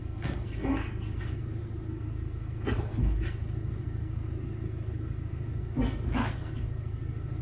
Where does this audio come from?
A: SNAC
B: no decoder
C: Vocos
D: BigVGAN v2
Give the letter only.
A